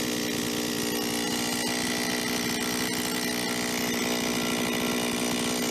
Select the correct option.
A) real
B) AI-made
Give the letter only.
A